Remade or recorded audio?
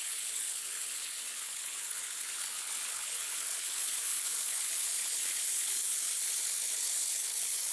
remade